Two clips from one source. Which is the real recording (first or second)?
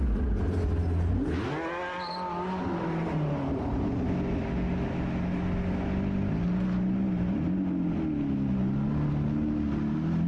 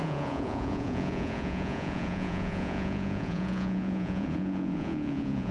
first